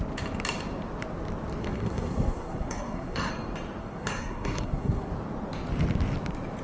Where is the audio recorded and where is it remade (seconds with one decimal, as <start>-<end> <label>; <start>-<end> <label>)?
0.0-1.6 recorded; 1.6-3.3 remade; 3.3-3.8 recorded; 3.8-5.1 remade; 5.1-6.6 recorded